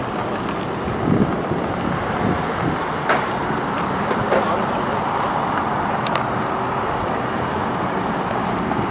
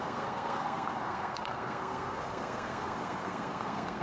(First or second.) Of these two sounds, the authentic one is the first